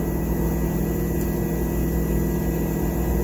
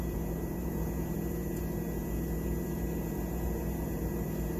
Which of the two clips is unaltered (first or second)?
first